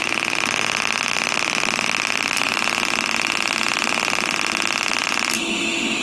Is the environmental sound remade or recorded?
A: recorded